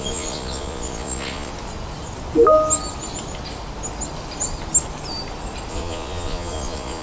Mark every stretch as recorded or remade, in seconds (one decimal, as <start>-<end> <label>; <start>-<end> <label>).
0.0-1.5 remade; 1.5-5.7 recorded; 5.7-7.0 remade